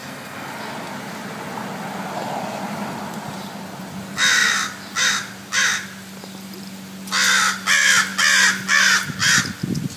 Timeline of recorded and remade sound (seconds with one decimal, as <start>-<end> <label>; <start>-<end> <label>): 0.0-0.5 remade; 0.5-10.0 recorded